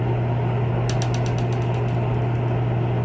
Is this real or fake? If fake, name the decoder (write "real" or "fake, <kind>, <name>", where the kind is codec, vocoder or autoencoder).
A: real